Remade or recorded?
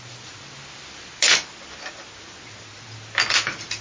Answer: recorded